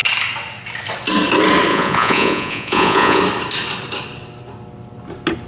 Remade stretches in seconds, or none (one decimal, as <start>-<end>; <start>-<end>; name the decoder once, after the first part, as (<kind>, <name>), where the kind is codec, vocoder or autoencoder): 1.7-3.2 (vocoder, Vocos)